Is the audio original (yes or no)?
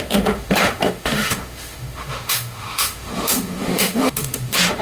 no